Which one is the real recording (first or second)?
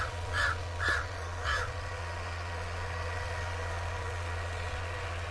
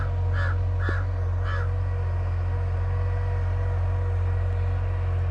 second